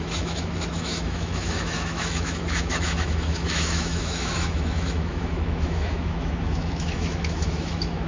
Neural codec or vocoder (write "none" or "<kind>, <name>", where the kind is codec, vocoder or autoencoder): autoencoder, DAC-VAE